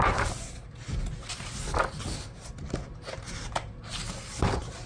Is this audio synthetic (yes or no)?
no